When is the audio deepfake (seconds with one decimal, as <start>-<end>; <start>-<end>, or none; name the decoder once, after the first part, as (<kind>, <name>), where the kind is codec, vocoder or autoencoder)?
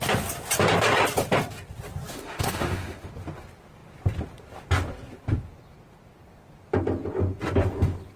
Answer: 2.1-3.1 (autoencoder, DAC-VAE)